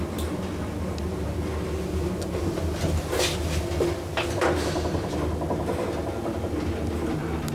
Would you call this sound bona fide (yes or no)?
yes